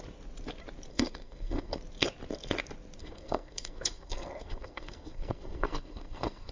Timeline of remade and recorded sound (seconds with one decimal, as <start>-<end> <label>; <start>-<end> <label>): 0.0-0.9 recorded; 0.9-1.8 remade; 1.8-3.0 recorded; 3.0-6.5 remade